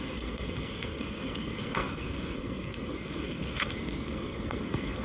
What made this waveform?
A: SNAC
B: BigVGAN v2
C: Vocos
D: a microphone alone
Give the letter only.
A